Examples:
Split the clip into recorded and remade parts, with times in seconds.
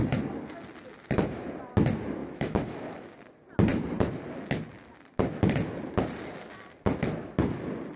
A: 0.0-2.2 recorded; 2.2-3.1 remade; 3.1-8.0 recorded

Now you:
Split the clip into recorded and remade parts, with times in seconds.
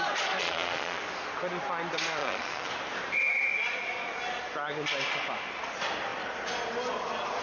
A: 0.0-0.4 recorded; 0.4-1.0 remade; 1.0-2.2 recorded; 2.2-2.7 remade; 2.7-7.4 recorded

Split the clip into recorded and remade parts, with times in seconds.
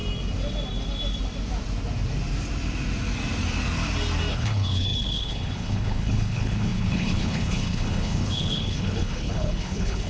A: 0.0-4.3 recorded; 4.3-10.1 remade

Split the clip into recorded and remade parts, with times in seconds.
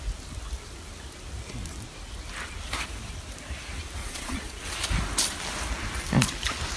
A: 0.0-4.0 recorded; 4.0-4.5 remade; 4.5-6.8 recorded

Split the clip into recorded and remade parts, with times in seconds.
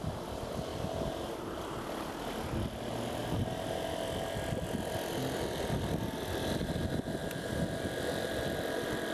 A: 0.0-9.1 recorded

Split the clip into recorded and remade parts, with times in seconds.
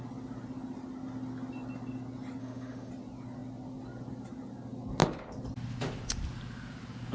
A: 0.0-2.4 recorded; 2.4-2.9 remade; 2.9-7.1 recorded